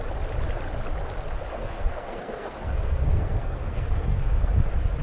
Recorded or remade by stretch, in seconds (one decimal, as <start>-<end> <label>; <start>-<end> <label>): 0.0-1.5 recorded; 1.5-4.5 remade; 4.5-5.0 recorded

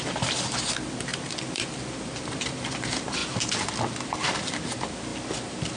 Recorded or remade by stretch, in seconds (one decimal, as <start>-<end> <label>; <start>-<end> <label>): 0.0-3.2 remade; 3.2-4.4 recorded; 4.4-5.1 remade; 5.1-5.8 recorded